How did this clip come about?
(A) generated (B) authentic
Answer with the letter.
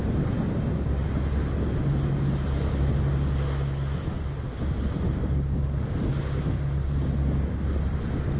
B